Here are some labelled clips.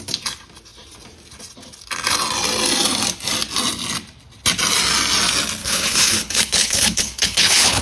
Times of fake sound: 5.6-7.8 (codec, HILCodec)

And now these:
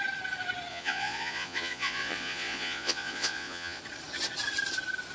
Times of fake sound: 0.7-3.8 (vocoder, Vocos)